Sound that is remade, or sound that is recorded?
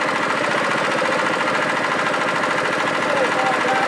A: recorded